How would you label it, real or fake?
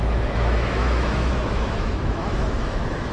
fake